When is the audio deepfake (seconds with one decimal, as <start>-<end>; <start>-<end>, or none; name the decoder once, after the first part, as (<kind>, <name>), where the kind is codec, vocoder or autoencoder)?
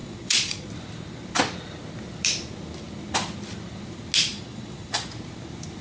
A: 0.0-0.7 (vocoder, Vocos); 4.3-5.1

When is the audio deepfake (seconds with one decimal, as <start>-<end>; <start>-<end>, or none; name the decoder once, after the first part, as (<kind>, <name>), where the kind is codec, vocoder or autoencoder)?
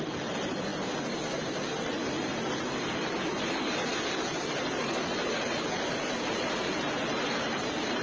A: none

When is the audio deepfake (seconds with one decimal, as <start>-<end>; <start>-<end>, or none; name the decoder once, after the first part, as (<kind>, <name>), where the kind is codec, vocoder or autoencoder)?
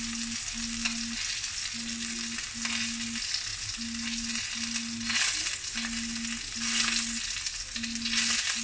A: none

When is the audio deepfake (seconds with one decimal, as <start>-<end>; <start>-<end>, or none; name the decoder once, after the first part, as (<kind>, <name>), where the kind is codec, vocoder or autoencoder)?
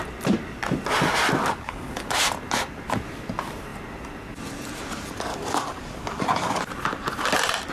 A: 1.4-2.0 (codec, DAC); 5.3-6.6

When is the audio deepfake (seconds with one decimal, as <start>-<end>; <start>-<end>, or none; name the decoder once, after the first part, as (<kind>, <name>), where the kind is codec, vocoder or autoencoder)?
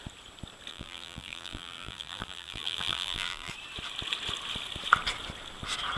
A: 0.7-3.5 (vocoder, BigVGAN v2)